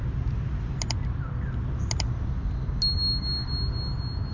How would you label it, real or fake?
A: real